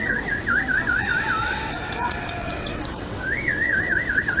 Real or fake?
fake